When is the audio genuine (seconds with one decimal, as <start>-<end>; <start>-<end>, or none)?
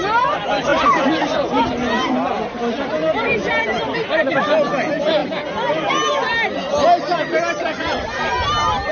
0.0-8.9